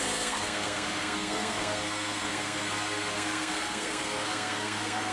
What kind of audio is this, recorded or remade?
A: remade